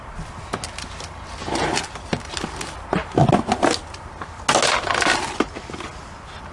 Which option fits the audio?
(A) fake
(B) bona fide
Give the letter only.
B